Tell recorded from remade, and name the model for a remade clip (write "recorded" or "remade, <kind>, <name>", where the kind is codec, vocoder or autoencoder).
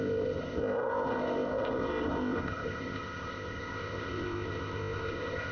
remade, codec, ZipCodec